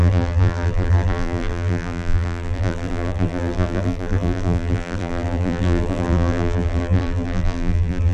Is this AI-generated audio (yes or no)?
yes